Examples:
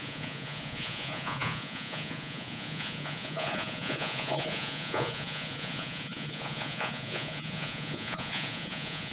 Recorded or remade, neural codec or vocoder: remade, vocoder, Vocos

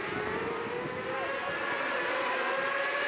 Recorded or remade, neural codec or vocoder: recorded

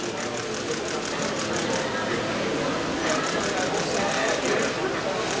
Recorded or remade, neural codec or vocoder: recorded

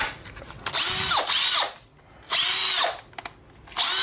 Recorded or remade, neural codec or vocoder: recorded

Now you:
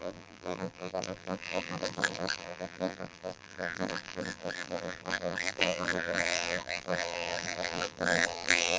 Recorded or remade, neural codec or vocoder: remade, vocoder, BigVGAN v2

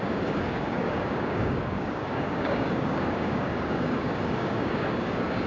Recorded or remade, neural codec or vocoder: remade, codec, DAC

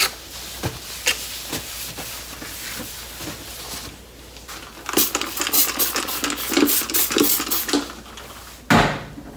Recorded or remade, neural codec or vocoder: recorded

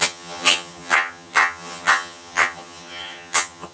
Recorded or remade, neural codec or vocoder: remade, vocoder, HiFi-GAN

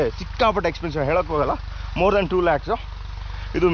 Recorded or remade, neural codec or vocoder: recorded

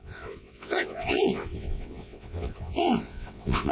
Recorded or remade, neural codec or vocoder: remade, vocoder, WaveNeXt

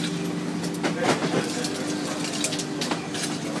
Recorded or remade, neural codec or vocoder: recorded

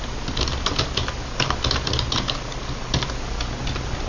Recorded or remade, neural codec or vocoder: recorded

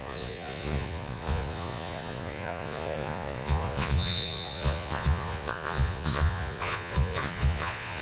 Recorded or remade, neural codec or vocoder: remade, vocoder, Vocos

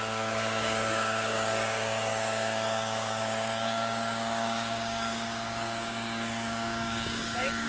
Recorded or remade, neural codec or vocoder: remade, codec, DAC